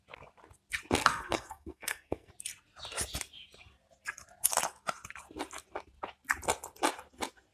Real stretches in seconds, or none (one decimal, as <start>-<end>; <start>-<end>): 0.0-1.0; 2.3-7.5